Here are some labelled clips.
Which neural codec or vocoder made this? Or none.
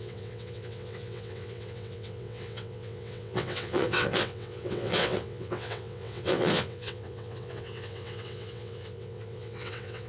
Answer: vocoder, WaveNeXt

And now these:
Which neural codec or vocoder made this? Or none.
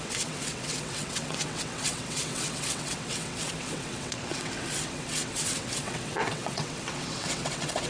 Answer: vocoder, WaveNeXt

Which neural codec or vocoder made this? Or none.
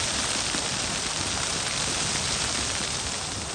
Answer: none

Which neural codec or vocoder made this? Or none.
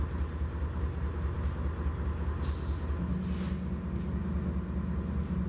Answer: none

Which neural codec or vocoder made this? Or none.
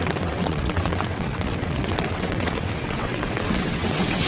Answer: vocoder, WaveNeXt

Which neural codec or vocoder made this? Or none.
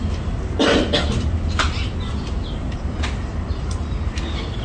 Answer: none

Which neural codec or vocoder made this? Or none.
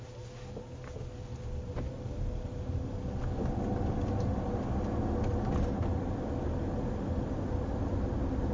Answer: none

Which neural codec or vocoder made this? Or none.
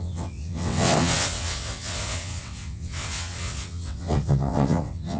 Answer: vocoder, WaveNeXt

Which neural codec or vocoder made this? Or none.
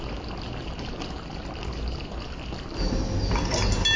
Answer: none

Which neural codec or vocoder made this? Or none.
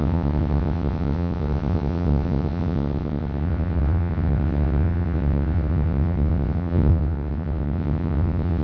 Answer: vocoder, WaveNeXt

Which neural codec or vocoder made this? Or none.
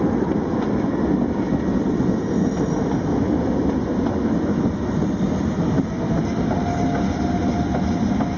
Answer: none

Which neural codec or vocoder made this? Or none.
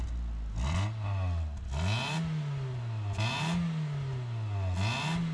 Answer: none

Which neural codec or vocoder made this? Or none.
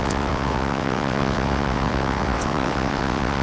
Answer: vocoder, WaveNeXt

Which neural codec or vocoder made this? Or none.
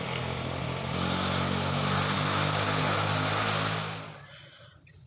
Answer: none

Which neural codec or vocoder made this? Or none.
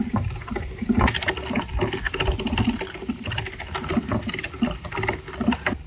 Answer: none